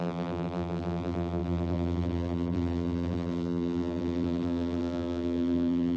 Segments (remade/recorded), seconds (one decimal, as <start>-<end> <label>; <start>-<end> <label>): 0.0-6.0 remade